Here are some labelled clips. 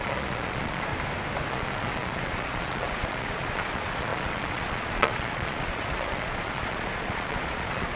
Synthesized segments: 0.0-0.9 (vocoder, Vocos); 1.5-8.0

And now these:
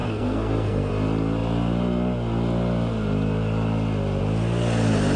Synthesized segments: 0.0-0.9 (codec, SNAC)

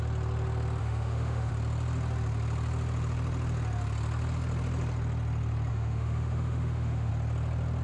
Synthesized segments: 0.8-1.5 (autoencoder, DAC-VAE); 5.7-7.1

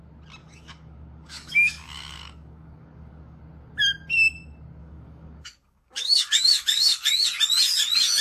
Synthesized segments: 0.4-3.4 (codec, DAC); 4.8-7.1

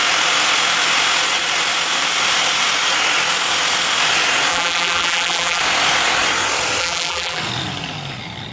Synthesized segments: 4.5-5.6 (vocoder, BigVGAN v2); 6.8-7.4

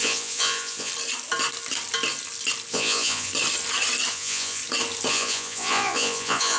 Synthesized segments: 0.0-0.9 (vocoder, Vocos); 2.7-3.3; 4.1-4.6; 5.1-6.6

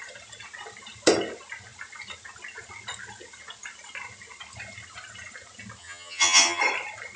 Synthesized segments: 5.8-6.6 (vocoder, HiFi-GAN)